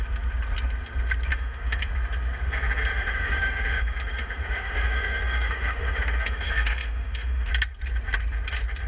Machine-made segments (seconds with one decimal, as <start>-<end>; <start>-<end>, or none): 1.3-1.9; 2.9-7.5